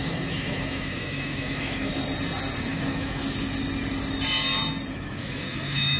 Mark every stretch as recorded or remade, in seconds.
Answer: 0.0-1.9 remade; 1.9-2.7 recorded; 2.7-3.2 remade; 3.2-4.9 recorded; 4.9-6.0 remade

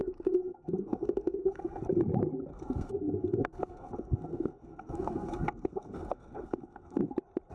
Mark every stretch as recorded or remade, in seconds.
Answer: 0.0-1.8 remade; 1.8-2.5 recorded; 2.5-7.0 remade; 7.0-7.5 recorded

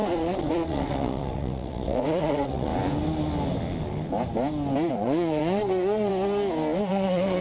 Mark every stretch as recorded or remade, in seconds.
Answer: 0.0-2.7 remade; 2.7-4.9 recorded; 4.9-6.1 remade; 6.1-6.9 recorded; 6.9-7.4 remade